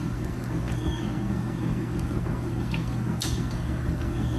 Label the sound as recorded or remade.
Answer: remade